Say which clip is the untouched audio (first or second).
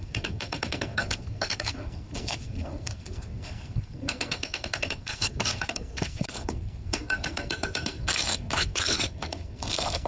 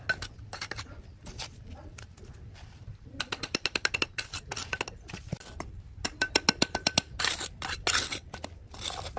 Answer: second